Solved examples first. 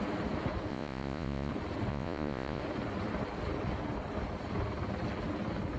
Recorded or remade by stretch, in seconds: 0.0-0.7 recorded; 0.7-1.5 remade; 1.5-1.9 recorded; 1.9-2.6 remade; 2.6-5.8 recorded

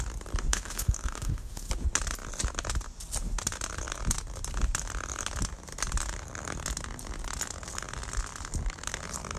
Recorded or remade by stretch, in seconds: 0.0-0.5 recorded; 0.5-1.7 remade; 1.7-9.4 recorded

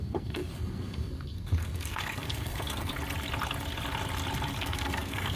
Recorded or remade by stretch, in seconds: 0.0-2.9 remade; 2.9-4.6 recorded; 4.6-5.4 remade

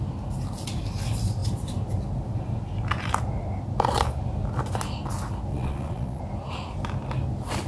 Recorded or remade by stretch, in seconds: 0.0-5.5 recorded; 5.5-6.2 remade; 6.2-7.7 recorded

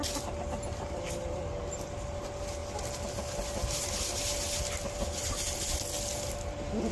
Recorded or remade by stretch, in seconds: 0.0-6.9 recorded

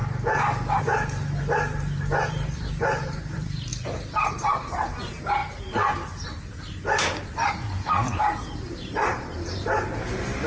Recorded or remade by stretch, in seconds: 0.0-0.8 recorded; 0.8-3.7 remade; 3.7-4.3 recorded; 4.3-5.4 remade; 5.4-7.5 recorded; 7.5-10.5 remade

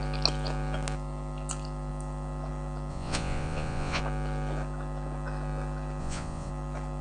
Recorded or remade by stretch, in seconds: 0.0-2.9 recorded; 2.9-4.0 remade; 4.0-6.0 recorded; 6.0-6.5 remade; 6.5-7.0 recorded

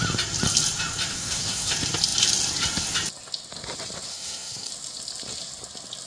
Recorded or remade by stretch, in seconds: 0.0-1.1 recorded; 1.1-1.7 remade; 1.7-4.1 recorded; 4.1-4.7 remade; 4.7-6.1 recorded